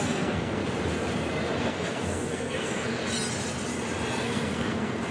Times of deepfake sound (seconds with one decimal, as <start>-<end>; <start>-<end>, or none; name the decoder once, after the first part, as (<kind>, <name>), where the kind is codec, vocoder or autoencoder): 0.0-0.6 (codec, SNAC); 1.6-3.0; 4.2-5.1